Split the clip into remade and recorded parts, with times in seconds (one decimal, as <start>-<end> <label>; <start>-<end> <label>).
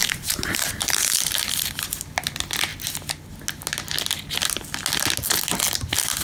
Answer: 0.0-1.4 remade; 1.4-6.2 recorded